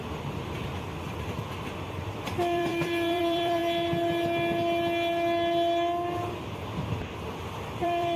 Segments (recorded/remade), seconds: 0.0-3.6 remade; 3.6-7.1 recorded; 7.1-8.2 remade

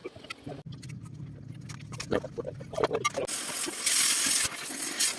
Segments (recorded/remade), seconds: 0.0-5.2 recorded

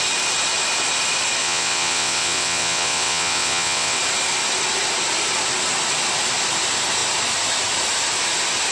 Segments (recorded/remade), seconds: 0.0-1.4 recorded; 1.4-4.0 remade; 4.0-8.7 recorded

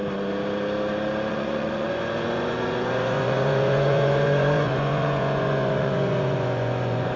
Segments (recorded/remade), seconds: 0.0-1.3 recorded; 1.3-7.2 remade

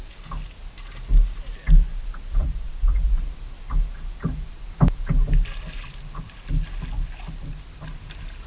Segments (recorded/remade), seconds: 0.0-2.4 recorded; 2.4-3.2 remade; 3.2-8.5 recorded

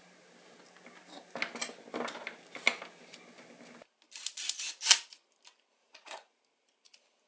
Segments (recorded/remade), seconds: 0.0-5.8 recorded; 5.8-6.4 remade; 6.4-7.3 recorded